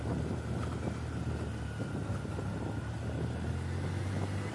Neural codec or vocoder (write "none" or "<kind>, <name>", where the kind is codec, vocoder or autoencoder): none